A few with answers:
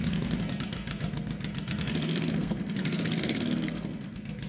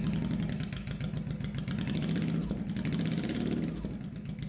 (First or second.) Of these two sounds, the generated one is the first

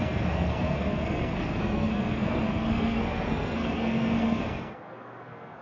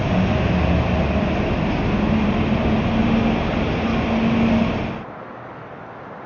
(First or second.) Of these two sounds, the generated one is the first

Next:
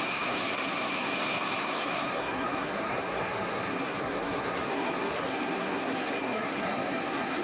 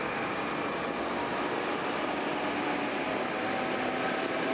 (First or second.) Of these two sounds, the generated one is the first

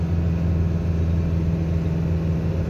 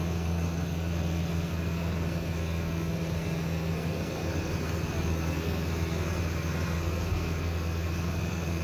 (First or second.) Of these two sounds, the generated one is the second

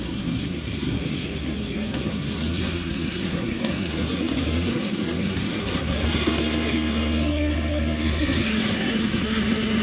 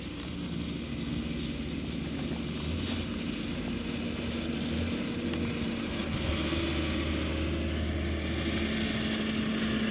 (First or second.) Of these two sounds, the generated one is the first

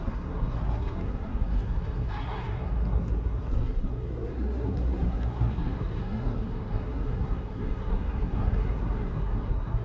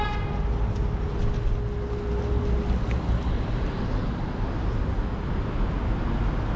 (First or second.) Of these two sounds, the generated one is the first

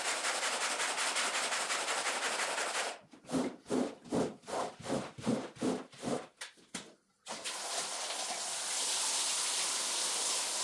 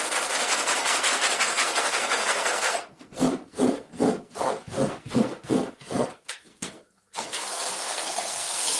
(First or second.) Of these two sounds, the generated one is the second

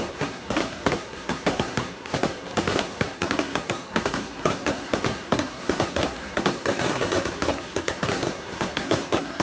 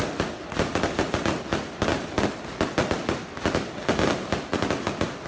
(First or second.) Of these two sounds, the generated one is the first